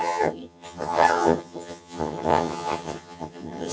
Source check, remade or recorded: remade